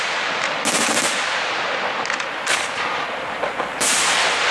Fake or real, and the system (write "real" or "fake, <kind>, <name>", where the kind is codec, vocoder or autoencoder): real